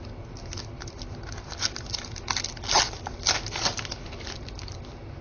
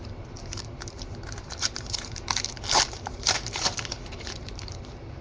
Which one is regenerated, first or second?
second